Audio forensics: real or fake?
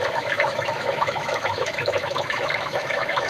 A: fake